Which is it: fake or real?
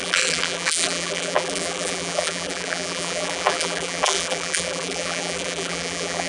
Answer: fake